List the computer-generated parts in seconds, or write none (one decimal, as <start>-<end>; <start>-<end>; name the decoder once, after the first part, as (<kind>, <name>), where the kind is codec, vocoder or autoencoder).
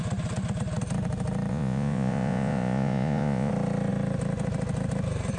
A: 1.5-3.5 (vocoder, Vocos)